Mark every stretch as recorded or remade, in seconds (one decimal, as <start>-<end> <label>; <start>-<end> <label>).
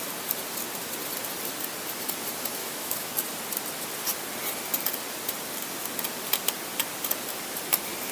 0.0-2.6 recorded; 2.6-3.1 remade; 3.1-8.1 recorded